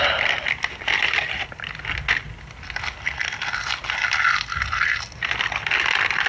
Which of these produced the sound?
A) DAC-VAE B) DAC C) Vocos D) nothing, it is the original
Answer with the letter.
D